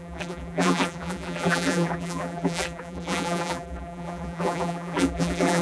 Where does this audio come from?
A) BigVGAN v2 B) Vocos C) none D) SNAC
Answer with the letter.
A